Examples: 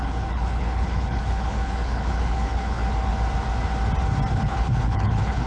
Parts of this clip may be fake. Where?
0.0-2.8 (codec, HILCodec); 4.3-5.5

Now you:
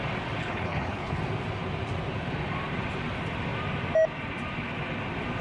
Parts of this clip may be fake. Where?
0.4-1.2 (codec, HILCodec)

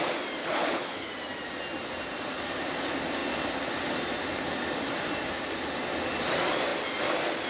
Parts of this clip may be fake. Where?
0.4-1.1 (codec, HILCodec)

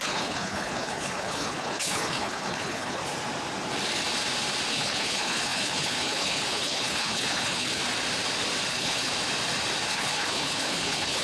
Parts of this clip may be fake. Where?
0.0-3.0 (codec, HILCodec); 4.7-7.8; 8.7-9.1; 9.9-11.2

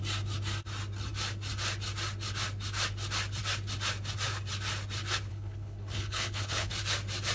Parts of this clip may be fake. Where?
5.3-6.7 (codec, HILCodec)

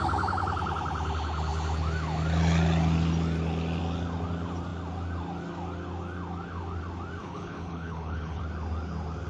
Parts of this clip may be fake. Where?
7.2-8.4 (codec, HILCodec)

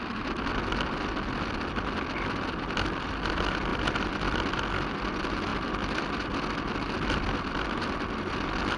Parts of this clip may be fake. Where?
none